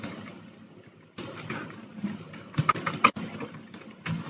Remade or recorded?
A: recorded